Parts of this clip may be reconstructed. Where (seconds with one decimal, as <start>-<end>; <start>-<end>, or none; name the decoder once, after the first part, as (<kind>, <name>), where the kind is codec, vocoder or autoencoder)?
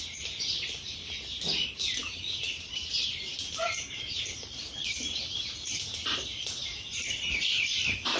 2.0-4.6 (vocoder, BigVGAN v2)